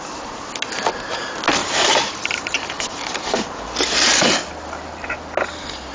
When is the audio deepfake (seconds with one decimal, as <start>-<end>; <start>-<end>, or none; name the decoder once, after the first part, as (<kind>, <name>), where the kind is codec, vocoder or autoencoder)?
1.6-3.6 (vocoder, BigVGAN v2)